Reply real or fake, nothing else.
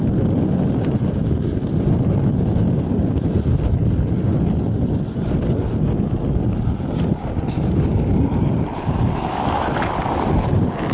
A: real